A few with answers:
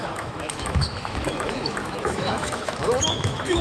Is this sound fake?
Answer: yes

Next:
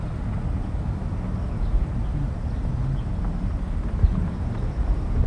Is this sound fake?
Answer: no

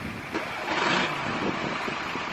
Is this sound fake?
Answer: no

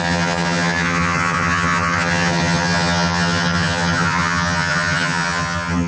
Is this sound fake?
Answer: yes